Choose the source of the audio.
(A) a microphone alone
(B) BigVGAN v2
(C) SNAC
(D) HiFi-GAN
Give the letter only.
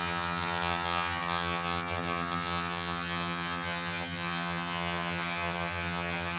D